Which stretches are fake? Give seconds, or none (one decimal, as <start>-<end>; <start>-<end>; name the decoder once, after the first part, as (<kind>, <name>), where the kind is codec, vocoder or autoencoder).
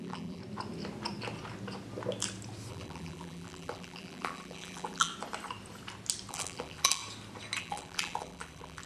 0.0-0.4 (vocoder, BigVGAN v2); 2.7-5.1; 6.3-7.0; 7.6-8.9